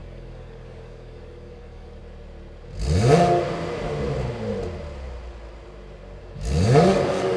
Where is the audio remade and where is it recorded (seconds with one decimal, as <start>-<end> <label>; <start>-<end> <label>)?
0.0-2.0 remade; 2.0-6.2 recorded; 6.2-7.4 remade